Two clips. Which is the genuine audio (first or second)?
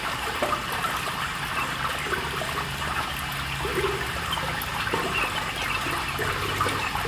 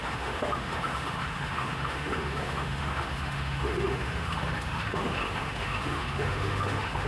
first